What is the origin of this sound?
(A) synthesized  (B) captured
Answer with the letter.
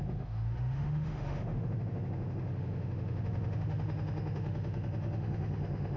A